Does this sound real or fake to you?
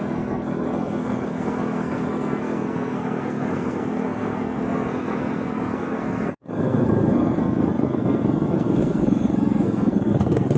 fake